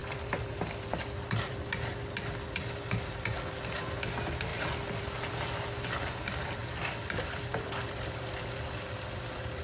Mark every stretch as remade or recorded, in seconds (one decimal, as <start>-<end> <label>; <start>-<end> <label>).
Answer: 0.0-1.7 remade; 1.7-6.6 recorded; 6.6-9.6 remade